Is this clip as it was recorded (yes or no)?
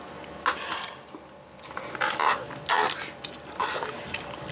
yes